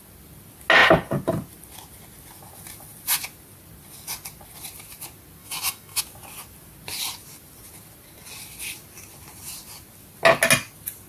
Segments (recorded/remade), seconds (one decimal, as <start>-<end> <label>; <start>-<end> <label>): 0.0-5.4 recorded; 5.4-6.0 remade; 6.0-11.1 recorded

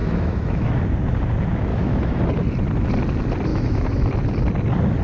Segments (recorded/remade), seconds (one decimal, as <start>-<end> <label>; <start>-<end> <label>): 0.0-0.8 remade; 0.8-1.7 recorded; 1.7-2.2 remade; 2.2-3.5 recorded; 3.5-4.1 remade; 4.1-5.0 recorded

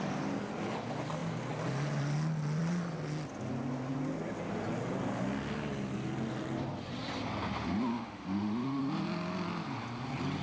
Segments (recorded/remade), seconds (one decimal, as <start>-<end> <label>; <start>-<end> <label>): 0.0-7.9 recorded; 7.9-8.8 remade; 8.8-10.4 recorded

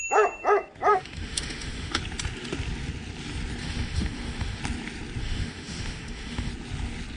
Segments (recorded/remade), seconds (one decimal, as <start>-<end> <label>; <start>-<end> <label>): 0.0-0.9 recorded; 0.9-2.0 remade; 2.0-3.6 recorded; 3.6-4.6 remade; 4.6-5.2 recorded; 5.2-6.5 remade; 6.5-7.2 recorded

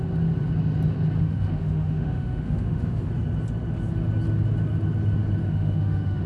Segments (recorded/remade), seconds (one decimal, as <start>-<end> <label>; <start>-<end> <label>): 0.0-1.2 recorded; 1.2-3.1 remade; 3.1-5.4 recorded; 5.4-6.3 remade

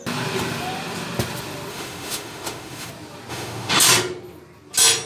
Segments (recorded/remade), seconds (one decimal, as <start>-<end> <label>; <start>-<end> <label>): 0.0-1.7 recorded; 1.7-2.9 remade; 2.9-3.3 recorded; 3.3-3.8 remade; 3.8-5.1 recorded

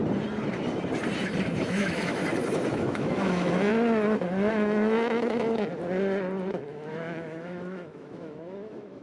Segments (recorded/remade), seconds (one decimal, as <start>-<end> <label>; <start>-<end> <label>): 0.0-1.6 recorded; 1.6-2.2 remade; 2.2-2.7 recorded; 2.7-3.7 remade; 3.7-4.5 recorded; 4.5-5.7 remade; 5.7-6.5 recorded; 6.5-9.0 remade